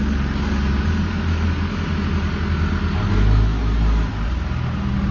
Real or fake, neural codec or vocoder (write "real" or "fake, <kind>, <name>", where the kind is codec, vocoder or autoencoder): real